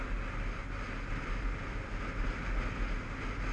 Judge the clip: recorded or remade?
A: recorded